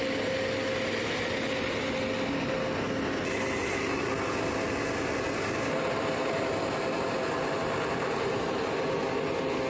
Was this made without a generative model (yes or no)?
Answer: yes